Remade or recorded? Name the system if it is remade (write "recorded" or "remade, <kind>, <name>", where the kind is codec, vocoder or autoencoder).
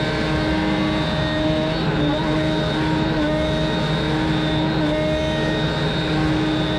recorded